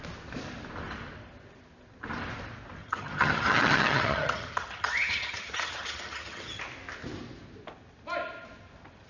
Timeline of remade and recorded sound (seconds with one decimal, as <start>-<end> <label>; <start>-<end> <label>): 0.0-2.8 recorded; 2.8-6.6 remade; 6.6-9.1 recorded